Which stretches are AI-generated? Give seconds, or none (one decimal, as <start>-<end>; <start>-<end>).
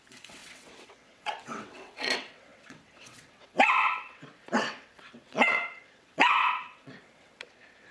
0.0-7.9